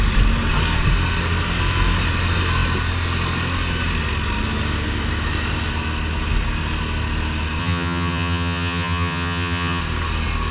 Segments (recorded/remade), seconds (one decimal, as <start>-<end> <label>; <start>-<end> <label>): 0.0-7.6 recorded; 7.6-9.8 remade; 9.8-10.5 recorded